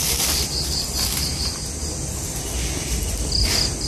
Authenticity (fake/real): fake